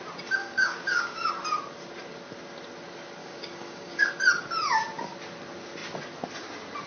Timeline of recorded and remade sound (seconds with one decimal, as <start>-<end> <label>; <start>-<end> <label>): 0.0-0.4 recorded; 0.4-1.3 remade; 1.3-3.2 recorded; 3.2-4.1 remade; 4.1-6.9 recorded